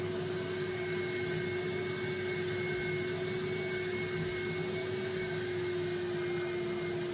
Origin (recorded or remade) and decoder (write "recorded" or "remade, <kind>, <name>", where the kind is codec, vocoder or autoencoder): recorded